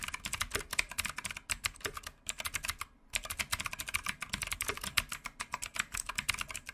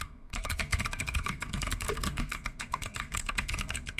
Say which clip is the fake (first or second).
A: second